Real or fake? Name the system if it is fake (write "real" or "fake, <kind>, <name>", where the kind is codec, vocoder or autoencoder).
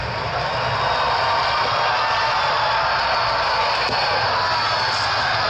real